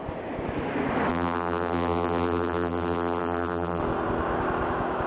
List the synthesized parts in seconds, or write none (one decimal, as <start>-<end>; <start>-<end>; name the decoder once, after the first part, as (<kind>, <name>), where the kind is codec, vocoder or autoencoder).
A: 1.1-3.8 (vocoder, BigVGAN v2)